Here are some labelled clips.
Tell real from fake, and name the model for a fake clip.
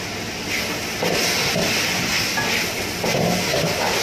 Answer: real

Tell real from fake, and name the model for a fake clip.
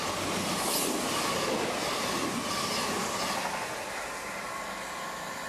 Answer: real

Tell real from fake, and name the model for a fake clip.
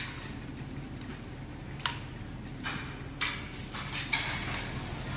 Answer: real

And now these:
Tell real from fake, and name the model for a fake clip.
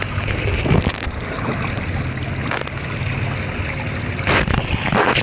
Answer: real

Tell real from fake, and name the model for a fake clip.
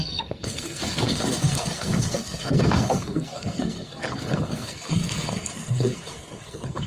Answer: fake, codec, SNAC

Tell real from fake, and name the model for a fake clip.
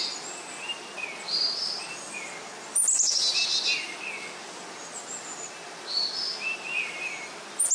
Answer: real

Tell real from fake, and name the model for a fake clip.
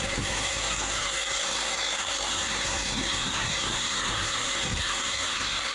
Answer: fake, codec, SNAC